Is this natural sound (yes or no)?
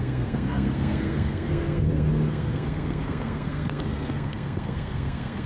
no